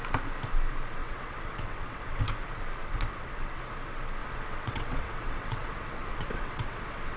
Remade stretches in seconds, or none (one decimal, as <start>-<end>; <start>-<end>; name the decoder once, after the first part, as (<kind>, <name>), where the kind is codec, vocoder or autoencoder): 1.0-2.2 (vocoder, WaveNeXt); 2.8-3.6; 4.2-7.2